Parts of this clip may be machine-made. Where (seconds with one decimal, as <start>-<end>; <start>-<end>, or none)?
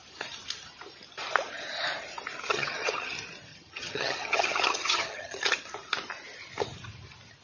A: 2.5-3.1; 3.5-5.4